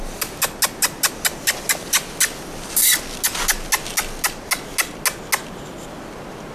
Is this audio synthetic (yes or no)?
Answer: no